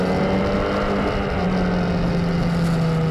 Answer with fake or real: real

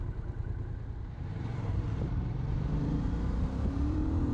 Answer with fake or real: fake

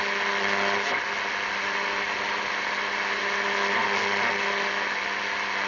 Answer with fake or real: real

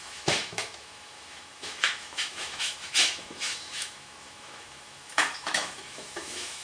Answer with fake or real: fake